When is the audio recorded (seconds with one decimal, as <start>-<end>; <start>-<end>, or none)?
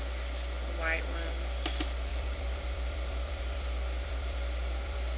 0.0-2.1